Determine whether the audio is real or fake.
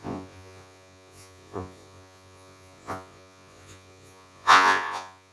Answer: fake